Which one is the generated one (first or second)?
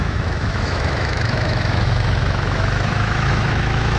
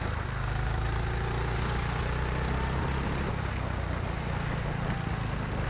first